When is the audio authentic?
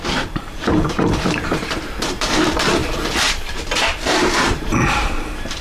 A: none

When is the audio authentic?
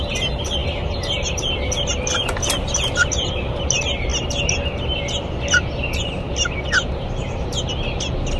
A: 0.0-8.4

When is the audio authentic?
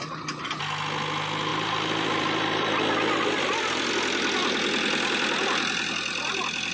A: 0.0-1.5; 3.9-6.7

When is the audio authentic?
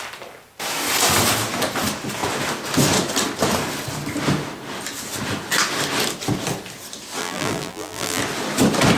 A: 0.0-7.2; 8.2-9.0